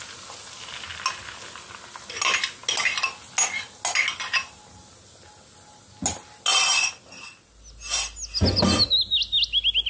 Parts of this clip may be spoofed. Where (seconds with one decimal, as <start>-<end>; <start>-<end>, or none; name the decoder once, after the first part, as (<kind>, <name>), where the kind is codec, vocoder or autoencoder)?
none